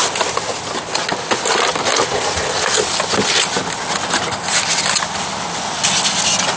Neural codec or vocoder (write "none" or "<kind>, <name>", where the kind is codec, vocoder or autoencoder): none